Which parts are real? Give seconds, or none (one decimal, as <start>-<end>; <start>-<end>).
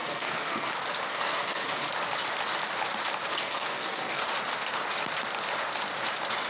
0.7-1.1; 1.9-3.3; 4.2-6.5